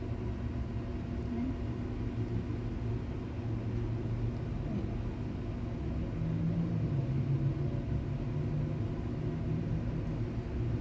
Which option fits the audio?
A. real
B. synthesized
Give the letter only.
A